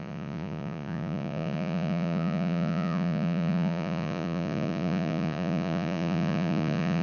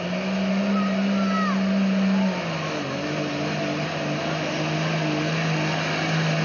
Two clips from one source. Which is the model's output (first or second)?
first